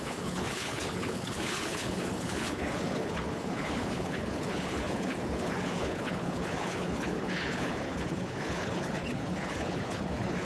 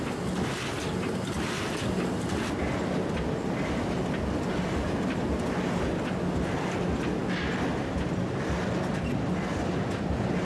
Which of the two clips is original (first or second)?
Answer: second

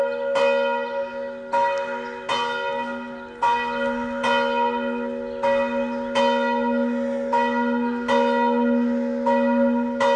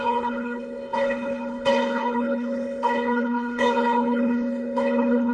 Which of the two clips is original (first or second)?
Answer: first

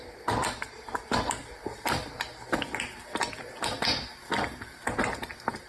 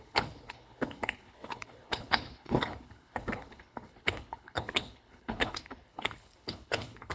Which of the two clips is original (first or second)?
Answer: first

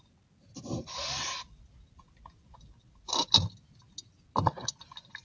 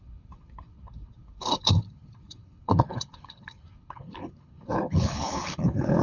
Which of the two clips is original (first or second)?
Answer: first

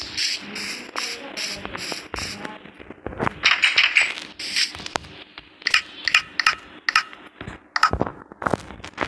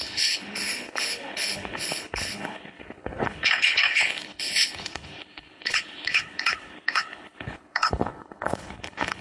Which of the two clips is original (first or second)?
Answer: first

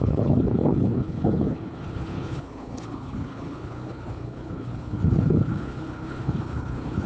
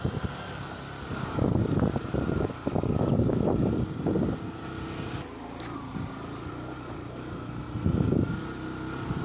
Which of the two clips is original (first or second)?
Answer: second